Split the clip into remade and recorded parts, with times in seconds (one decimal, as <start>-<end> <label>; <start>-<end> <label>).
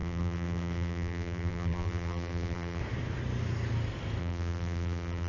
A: 0.0-2.8 remade; 2.8-4.2 recorded; 4.2-5.3 remade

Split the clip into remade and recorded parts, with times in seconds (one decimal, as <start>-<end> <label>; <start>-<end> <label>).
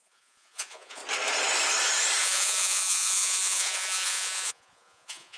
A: 0.0-1.0 remade; 1.0-2.2 recorded; 2.2-5.4 remade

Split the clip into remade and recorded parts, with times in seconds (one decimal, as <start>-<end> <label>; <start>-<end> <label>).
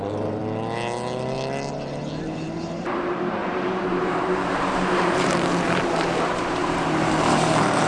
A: 0.0-0.4 remade; 0.4-1.7 recorded; 1.7-7.9 remade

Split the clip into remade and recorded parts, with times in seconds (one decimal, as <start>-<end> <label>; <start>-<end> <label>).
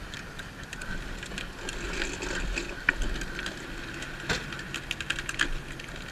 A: 0.0-6.1 recorded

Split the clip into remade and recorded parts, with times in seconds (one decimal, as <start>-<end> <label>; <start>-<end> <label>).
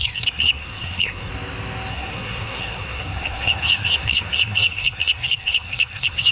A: 0.0-1.3 remade; 1.3-1.9 recorded; 1.9-6.3 remade